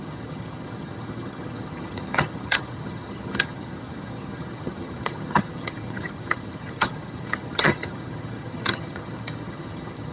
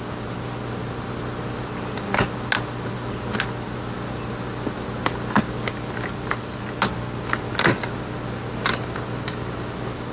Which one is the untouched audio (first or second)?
second